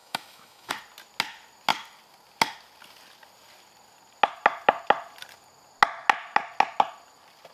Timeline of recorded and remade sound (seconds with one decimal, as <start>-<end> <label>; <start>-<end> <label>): 0.0-0.7 remade; 0.7-7.5 recorded